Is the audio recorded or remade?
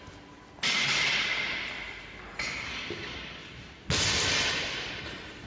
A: recorded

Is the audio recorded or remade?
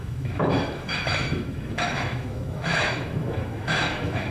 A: remade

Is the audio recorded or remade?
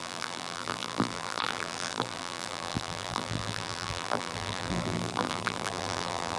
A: remade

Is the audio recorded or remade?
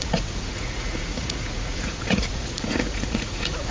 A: remade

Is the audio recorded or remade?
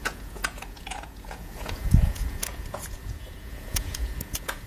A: remade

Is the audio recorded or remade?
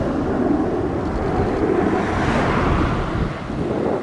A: recorded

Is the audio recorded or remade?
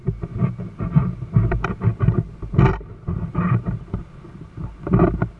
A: recorded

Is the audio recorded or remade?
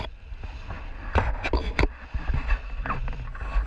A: recorded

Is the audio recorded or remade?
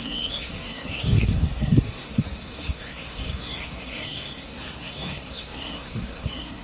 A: remade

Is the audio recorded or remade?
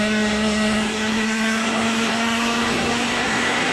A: remade